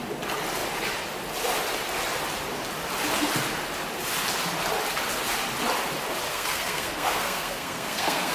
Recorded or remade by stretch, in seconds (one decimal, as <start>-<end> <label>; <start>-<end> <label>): 0.0-6.3 recorded; 6.3-8.3 remade